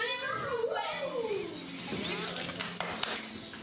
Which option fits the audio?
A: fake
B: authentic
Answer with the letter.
B